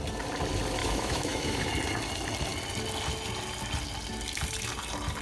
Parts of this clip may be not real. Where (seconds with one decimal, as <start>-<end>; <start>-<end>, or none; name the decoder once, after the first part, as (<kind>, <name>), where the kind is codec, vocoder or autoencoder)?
0.8-1.7 (autoencoder, DAC-VAE)